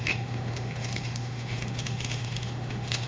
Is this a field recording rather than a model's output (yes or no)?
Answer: no